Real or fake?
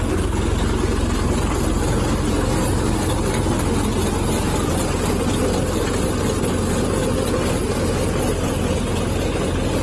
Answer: real